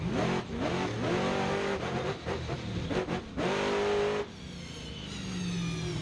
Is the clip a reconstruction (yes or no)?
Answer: no